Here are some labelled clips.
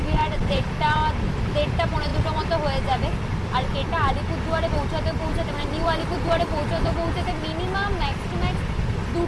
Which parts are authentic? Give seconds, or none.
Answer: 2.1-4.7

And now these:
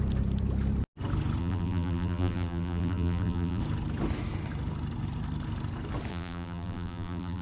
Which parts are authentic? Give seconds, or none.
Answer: 0.0-1.4; 3.6-6.1